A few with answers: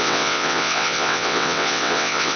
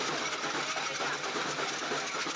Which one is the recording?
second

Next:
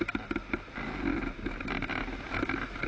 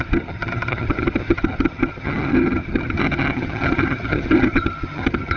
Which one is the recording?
first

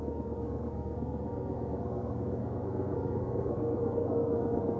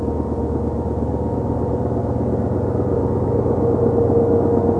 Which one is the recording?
second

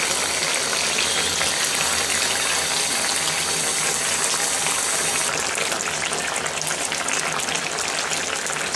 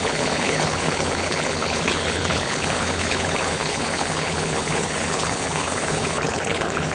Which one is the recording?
first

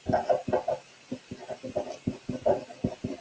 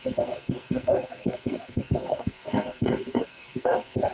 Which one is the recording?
first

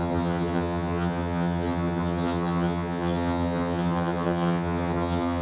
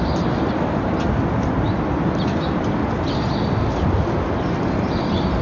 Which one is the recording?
second